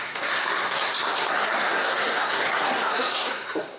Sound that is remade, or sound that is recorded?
remade